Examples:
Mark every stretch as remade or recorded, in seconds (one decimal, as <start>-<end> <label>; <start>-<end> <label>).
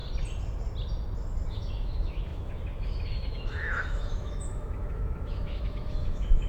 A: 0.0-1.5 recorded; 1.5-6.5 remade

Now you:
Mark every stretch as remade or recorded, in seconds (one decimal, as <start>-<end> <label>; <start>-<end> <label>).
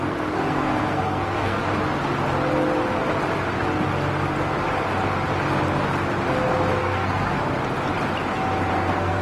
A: 0.0-1.6 remade; 1.6-6.8 recorded; 6.8-7.4 remade; 7.4-8.7 recorded; 8.7-9.2 remade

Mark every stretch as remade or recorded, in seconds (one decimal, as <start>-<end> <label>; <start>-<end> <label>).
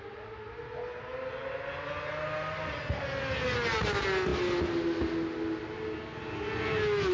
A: 0.0-7.1 recorded